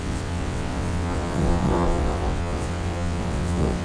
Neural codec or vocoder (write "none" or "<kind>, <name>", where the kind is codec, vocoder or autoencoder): vocoder, WaveNeXt